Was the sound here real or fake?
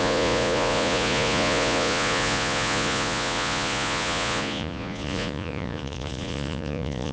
fake